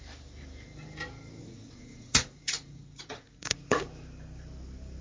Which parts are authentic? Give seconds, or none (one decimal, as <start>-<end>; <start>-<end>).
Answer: 0.0-1.4; 3.8-5.0